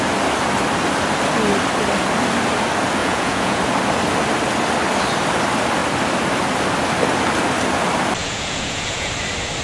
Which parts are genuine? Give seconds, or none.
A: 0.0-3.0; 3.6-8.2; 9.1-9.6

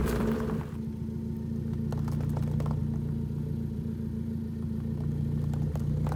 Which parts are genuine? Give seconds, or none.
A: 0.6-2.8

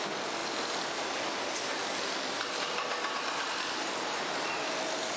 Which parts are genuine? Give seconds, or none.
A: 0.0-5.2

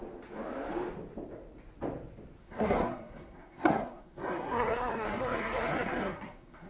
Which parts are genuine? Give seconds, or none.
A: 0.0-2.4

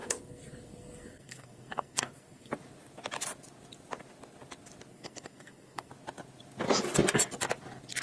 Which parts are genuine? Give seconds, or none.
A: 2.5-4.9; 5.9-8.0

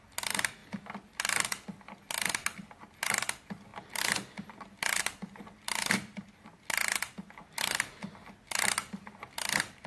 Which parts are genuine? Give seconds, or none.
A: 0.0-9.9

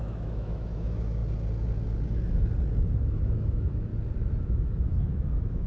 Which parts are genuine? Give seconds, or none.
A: 1.2-3.1; 3.9-4.4

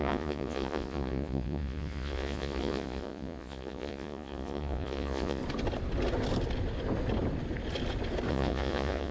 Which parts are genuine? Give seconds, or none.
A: 5.4-8.3